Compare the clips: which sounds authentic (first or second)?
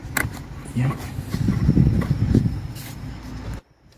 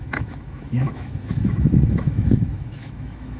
first